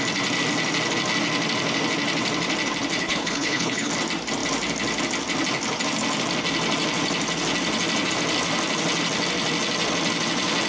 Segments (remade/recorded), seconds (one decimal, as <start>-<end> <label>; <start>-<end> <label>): 0.0-3.0 recorded; 3.0-3.9 remade; 3.9-10.7 recorded